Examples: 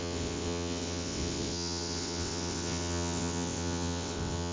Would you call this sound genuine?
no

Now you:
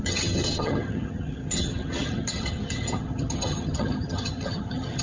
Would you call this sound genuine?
no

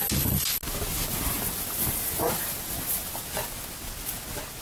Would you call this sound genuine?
yes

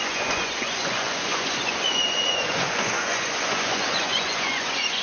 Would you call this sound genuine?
no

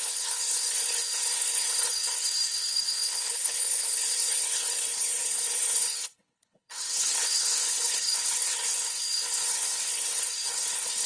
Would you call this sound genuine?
no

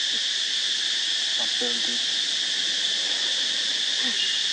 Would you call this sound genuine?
yes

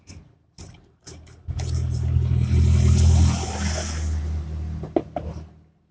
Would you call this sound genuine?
yes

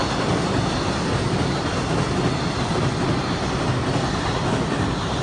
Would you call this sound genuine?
yes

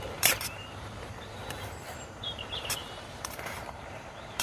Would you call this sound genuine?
no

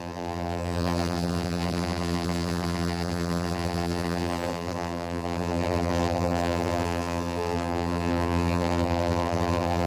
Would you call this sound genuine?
no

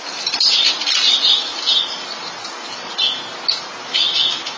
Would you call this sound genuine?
yes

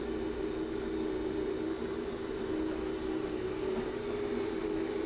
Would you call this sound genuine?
yes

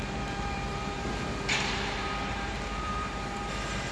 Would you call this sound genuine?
no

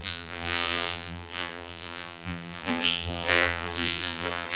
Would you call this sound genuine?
no